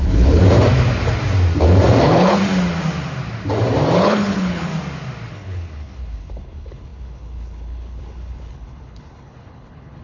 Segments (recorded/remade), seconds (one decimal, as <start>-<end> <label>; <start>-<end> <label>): 0.0-0.4 remade; 0.4-2.0 recorded; 2.0-2.4 remade; 2.4-4.0 recorded; 4.0-4.7 remade; 4.7-5.3 recorded; 5.3-10.0 remade